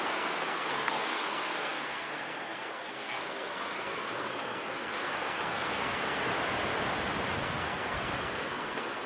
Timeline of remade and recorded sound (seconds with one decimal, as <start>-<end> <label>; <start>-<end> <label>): 0.0-6.3 remade; 6.3-7.4 recorded; 7.4-9.1 remade

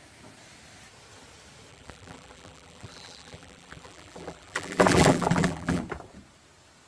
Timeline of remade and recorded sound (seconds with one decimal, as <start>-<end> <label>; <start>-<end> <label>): 0.0-1.7 recorded; 1.7-5.8 remade; 5.8-6.9 recorded

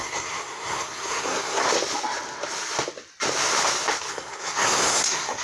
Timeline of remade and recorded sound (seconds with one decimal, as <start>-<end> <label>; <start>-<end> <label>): 0.0-1.6 remade; 1.6-4.1 recorded; 4.1-5.4 remade

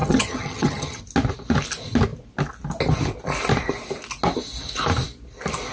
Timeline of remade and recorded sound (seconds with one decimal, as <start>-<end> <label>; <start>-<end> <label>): 0.0-1.0 remade; 1.0-5.7 recorded

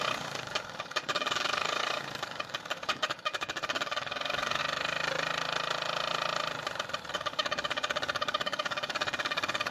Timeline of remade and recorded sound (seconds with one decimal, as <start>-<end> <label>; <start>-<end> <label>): 0.0-4.6 remade; 4.6-7.1 recorded; 7.1-9.7 remade

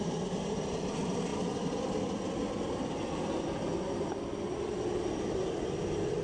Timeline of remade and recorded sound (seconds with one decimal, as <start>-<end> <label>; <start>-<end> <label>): 0.0-6.2 recorded

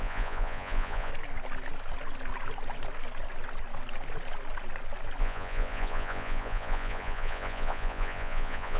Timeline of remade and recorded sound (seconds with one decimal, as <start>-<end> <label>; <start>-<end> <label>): 0.0-1.1 remade; 1.1-5.2 recorded; 5.2-8.8 remade